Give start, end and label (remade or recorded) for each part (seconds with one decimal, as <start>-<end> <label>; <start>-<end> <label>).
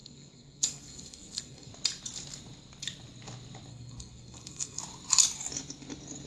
0.0-1.7 remade; 1.7-3.7 recorded; 3.7-4.8 remade; 4.8-6.3 recorded